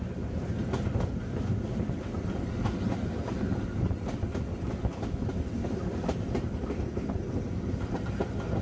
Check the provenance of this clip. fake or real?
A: real